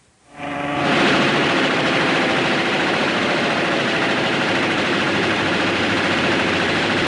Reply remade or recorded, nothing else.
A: remade